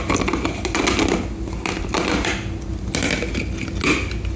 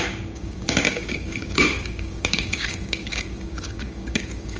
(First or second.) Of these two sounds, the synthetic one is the second